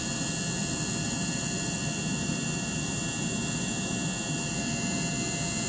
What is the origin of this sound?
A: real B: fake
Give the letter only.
A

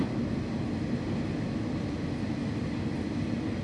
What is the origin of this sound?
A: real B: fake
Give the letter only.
A